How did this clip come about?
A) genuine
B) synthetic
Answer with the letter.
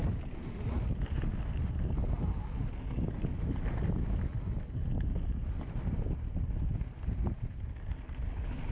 A